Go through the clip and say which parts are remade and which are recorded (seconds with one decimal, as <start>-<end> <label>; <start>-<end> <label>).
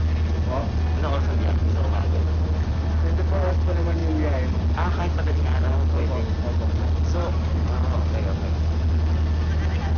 0.0-1.6 recorded; 1.6-2.2 remade; 2.2-10.0 recorded